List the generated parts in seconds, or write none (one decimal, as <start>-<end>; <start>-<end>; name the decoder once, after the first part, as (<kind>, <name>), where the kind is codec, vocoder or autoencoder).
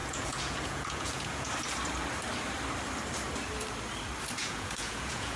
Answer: 0.0-1.5 (vocoder, Vocos); 4.4-5.4